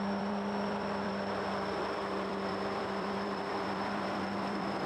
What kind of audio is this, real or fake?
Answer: fake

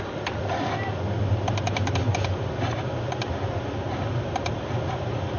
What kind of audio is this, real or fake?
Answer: real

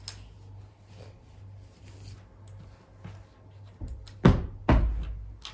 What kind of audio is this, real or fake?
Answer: real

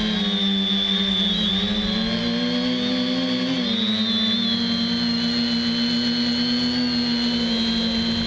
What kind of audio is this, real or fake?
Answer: real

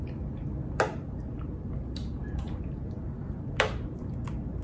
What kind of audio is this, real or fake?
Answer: real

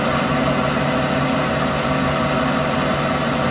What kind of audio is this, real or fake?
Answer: real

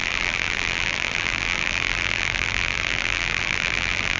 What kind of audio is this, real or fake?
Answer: fake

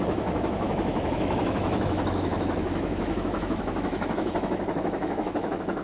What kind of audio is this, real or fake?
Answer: fake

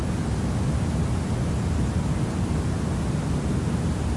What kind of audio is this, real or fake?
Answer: real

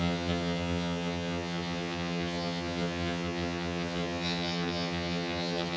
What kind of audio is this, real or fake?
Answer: fake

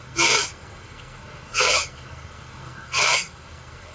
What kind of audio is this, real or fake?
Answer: fake